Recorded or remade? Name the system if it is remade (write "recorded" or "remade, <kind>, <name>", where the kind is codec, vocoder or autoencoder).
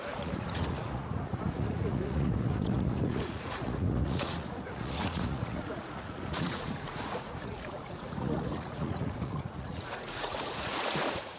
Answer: remade, vocoder, Vocos